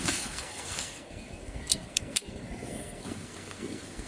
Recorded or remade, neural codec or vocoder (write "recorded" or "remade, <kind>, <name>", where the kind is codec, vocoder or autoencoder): remade, codec, SNAC